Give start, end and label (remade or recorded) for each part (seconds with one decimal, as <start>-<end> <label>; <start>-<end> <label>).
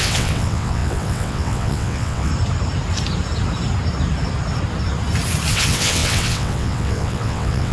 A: 0.0-2.3 remade; 2.3-5.5 recorded; 5.5-7.7 remade